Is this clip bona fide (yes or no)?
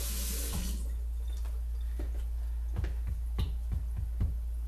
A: yes